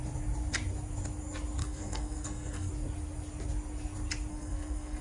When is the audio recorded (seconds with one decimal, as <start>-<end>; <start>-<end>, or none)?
0.0-1.6; 2.7-4.3

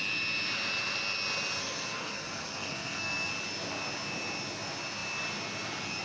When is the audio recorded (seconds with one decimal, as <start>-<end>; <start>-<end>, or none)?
0.0-1.6; 3.3-6.0

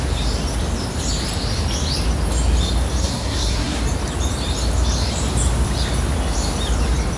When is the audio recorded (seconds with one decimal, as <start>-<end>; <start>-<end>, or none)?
0.0-3.0; 3.8-7.2

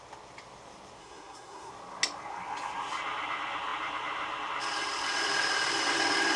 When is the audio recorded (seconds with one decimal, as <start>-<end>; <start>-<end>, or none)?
0.0-1.0; 1.7-6.4

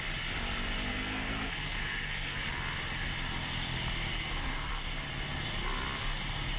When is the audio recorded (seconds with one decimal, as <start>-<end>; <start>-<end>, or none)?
0.0-0.9; 2.5-4.1; 4.7-6.6

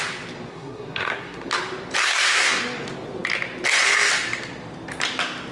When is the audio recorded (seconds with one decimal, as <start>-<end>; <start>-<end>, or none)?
0.0-0.5; 1.5-2.0; 2.6-5.5

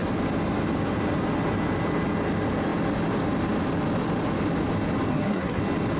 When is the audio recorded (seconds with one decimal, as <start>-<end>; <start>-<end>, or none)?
0.0-5.1; 5.6-6.0